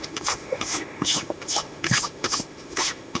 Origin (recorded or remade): remade